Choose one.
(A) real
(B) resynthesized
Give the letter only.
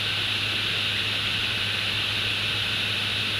A